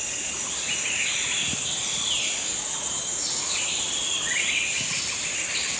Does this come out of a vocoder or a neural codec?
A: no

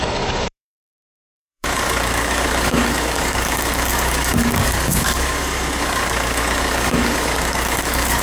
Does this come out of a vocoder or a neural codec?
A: yes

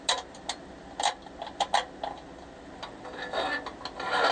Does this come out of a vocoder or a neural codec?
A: no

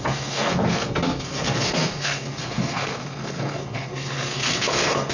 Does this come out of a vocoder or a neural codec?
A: yes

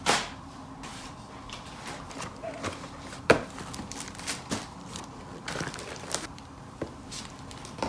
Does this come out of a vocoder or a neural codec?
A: yes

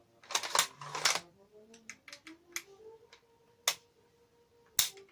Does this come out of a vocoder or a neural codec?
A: no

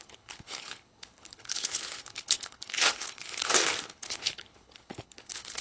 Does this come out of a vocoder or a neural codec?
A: yes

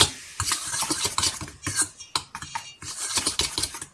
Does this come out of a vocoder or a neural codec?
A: no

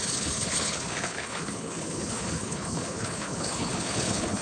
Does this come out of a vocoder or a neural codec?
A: yes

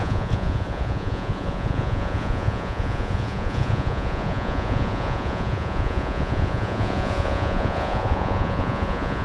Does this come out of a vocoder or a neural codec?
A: yes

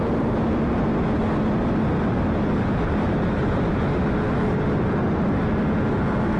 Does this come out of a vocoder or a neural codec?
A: no